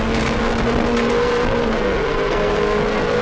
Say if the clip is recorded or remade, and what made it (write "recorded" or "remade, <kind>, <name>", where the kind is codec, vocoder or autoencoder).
remade, codec, SNAC